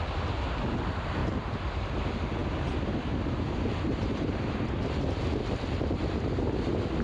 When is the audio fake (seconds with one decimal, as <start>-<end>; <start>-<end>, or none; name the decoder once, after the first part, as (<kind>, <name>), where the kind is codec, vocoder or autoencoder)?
1.2-2.0 (vocoder, BigVGAN v2); 3.9-4.4